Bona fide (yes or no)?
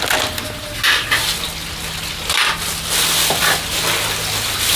yes